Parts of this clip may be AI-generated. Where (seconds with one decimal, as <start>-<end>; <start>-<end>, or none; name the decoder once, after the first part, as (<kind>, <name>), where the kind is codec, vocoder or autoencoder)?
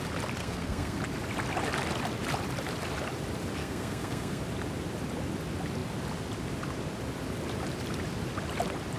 0.4-1.0 (codec, SNAC); 3.6-4.4